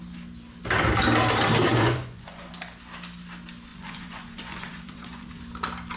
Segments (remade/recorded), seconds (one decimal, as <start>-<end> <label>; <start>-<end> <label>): 0.0-1.7 recorded; 1.7-2.5 remade; 2.5-3.7 recorded; 3.7-5.4 remade; 5.4-6.0 recorded